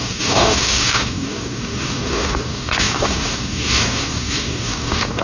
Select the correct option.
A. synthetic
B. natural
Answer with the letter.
A